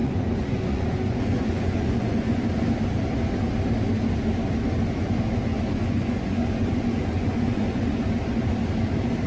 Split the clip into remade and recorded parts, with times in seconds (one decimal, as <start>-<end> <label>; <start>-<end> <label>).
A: 0.0-2.4 remade; 2.4-5.5 recorded; 5.5-8.0 remade; 8.0-9.3 recorded

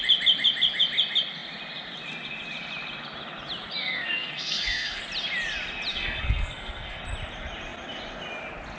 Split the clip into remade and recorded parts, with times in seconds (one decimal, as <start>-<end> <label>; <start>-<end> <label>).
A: 0.0-3.8 recorded; 3.8-5.0 remade; 5.0-5.9 recorded; 5.9-7.0 remade; 7.0-8.8 recorded

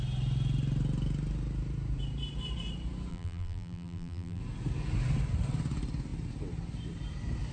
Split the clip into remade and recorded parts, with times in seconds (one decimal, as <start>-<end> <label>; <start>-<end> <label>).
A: 0.0-3.1 recorded; 3.1-4.4 remade; 4.4-7.5 recorded

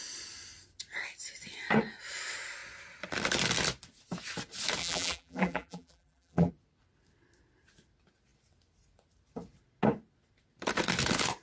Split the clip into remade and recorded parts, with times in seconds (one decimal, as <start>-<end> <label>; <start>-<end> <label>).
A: 0.0-4.8 recorded; 4.8-6.5 remade; 6.5-11.4 recorded

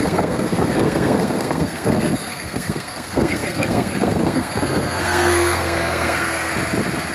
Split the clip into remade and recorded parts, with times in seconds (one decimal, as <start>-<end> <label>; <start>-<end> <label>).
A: 0.0-6.5 remade; 6.5-7.1 recorded